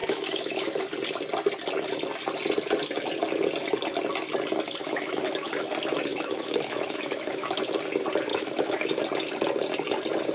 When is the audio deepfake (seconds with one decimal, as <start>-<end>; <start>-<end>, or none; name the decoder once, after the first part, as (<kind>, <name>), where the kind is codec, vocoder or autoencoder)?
0.0-0.8 (autoencoder, DAC-VAE); 4.8-5.5; 6.1-7.6; 8.3-9.0

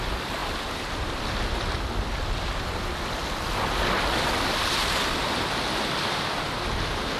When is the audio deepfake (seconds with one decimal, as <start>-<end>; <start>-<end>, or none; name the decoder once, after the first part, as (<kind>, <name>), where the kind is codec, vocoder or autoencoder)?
5.2-5.8 (vocoder, BigVGAN v2)

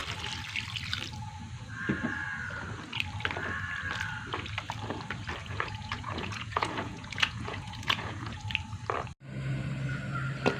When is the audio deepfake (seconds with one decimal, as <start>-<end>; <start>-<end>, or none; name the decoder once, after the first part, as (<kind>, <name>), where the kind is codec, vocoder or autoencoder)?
5.4-8.4 (vocoder, Vocos)

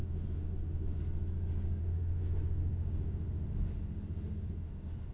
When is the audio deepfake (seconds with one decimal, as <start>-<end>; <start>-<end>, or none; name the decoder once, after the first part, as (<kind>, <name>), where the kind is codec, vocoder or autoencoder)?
0.0-1.0 (autoencoder, DAC-VAE); 1.8-5.1

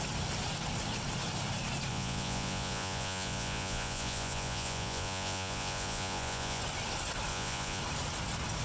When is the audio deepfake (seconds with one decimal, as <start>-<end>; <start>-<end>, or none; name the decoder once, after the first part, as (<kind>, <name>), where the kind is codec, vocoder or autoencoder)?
1.9-6.6 (vocoder, Vocos); 7.3-7.8